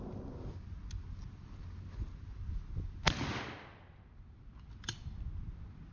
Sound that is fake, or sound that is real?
real